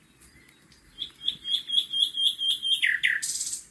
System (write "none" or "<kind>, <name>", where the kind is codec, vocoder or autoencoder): none